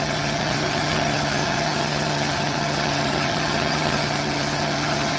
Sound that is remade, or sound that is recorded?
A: remade